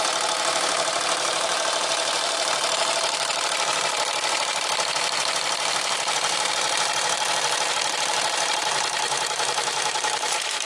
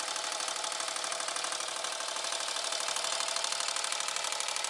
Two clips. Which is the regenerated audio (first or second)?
first